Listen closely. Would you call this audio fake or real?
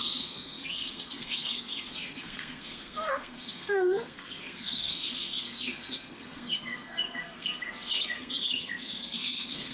fake